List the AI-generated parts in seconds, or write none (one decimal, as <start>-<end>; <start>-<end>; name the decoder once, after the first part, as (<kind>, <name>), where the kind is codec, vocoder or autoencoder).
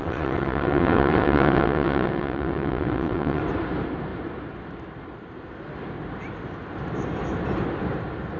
0.0-3.4 (vocoder, WaveNeXt)